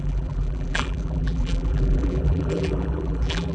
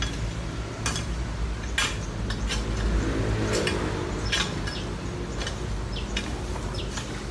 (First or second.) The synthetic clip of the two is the first